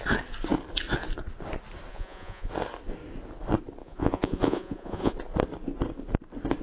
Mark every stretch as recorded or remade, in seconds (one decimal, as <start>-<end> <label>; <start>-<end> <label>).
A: 0.0-1.9 recorded; 1.9-2.5 remade; 2.5-3.8 recorded; 3.8-5.1 remade; 5.1-6.6 recorded